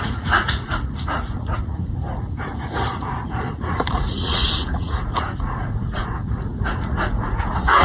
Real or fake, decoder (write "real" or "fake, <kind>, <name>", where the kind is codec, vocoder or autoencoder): fake, vocoder, Vocos